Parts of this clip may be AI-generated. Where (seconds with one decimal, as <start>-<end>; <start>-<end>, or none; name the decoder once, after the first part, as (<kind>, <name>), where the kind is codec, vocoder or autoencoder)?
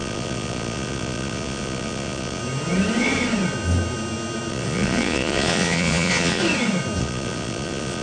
0.0-2.4 (vocoder, Vocos); 4.5-6.4; 7.0-8.0